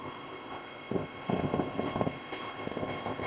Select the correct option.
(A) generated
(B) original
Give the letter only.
A